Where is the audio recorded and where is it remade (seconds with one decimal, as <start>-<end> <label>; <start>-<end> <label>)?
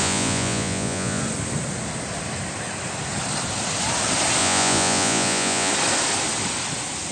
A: 0.0-1.2 remade; 1.2-4.4 recorded; 4.4-5.7 remade; 5.7-7.1 recorded